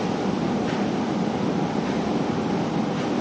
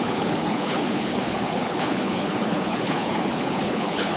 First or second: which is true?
first